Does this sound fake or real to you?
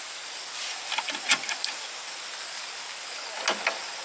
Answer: real